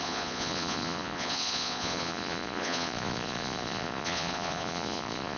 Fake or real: fake